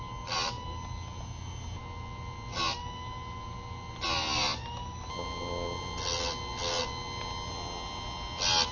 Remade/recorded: recorded